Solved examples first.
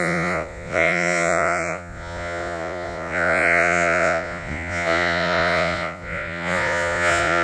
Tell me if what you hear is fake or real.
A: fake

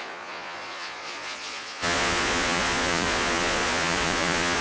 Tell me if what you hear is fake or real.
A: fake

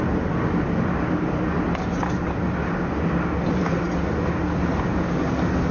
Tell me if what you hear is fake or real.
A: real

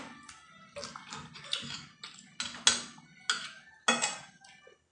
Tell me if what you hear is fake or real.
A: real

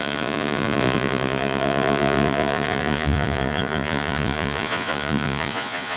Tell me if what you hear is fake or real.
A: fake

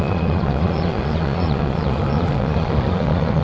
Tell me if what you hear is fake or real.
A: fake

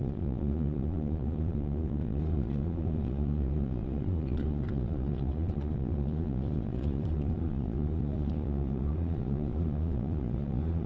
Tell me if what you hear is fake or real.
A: fake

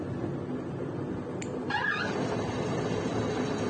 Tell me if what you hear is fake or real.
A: real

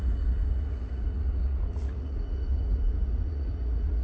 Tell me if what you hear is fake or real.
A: fake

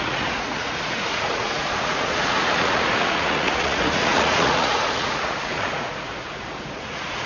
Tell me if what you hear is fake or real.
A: fake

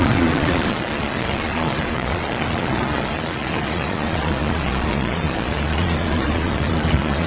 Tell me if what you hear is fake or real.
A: fake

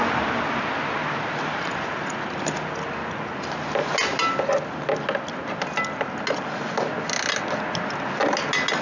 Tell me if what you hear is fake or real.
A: real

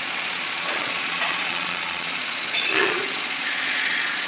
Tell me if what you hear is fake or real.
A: fake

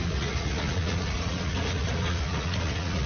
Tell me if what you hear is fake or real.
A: fake